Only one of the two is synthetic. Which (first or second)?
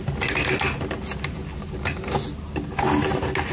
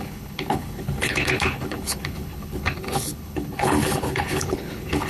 second